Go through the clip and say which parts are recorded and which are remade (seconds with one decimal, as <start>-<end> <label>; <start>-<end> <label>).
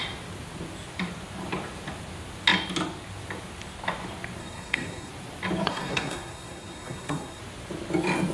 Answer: 0.0-4.4 recorded; 4.4-5.1 remade; 5.1-5.7 recorded; 5.7-7.4 remade; 7.4-8.3 recorded